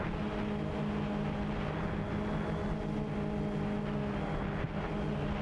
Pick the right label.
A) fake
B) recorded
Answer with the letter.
B